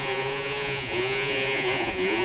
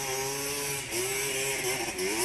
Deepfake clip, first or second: first